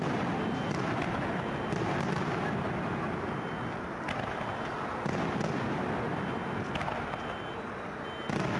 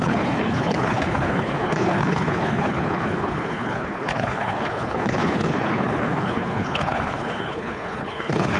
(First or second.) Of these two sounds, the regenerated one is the second